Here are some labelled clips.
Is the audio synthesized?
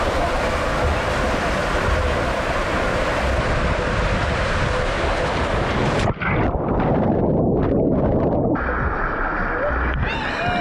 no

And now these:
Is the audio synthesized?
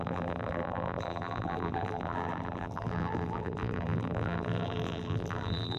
yes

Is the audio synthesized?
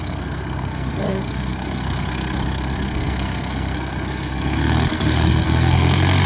yes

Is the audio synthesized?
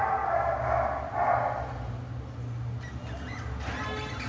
no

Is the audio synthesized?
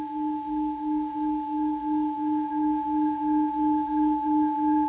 yes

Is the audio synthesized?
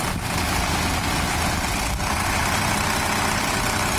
yes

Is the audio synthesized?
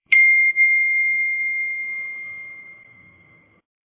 yes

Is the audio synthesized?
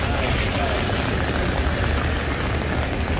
no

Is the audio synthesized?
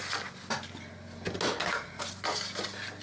no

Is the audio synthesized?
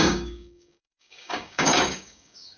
yes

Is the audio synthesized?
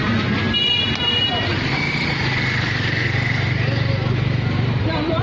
no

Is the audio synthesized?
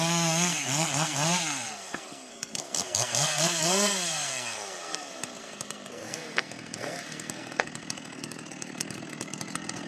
yes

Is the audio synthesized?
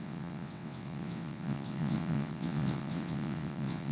yes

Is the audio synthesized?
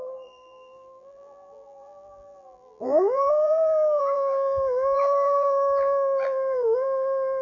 yes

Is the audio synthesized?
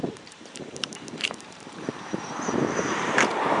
yes